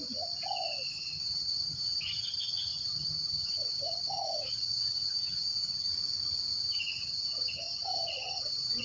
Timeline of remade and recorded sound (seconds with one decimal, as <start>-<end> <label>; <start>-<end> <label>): 0.0-0.9 recorded; 0.9-5.9 remade; 5.9-6.6 recorded; 6.6-8.8 remade